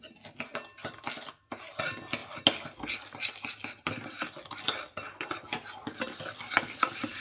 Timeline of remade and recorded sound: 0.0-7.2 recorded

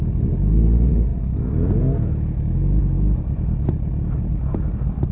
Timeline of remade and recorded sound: 0.0-5.1 recorded

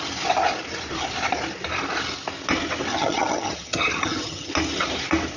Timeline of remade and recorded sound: 0.0-2.9 recorded; 2.9-4.5 remade; 4.5-5.4 recorded

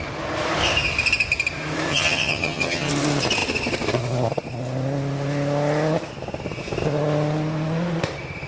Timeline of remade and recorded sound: 0.0-1.9 recorded; 1.9-2.9 remade; 2.9-8.5 recorded

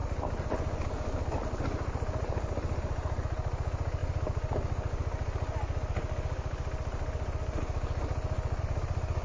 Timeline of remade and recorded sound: 0.0-9.2 recorded

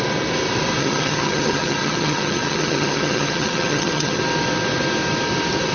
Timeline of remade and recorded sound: 0.0-0.8 recorded; 0.8-4.2 remade; 4.2-5.7 recorded

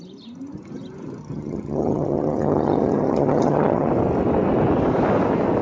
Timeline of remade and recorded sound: 0.0-1.2 recorded; 1.2-3.9 remade; 3.9-5.6 recorded

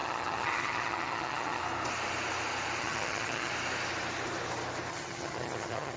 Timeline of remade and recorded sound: 0.0-1.6 remade; 1.6-2.8 recorded; 2.8-3.5 remade; 3.5-4.9 recorded; 4.9-6.0 remade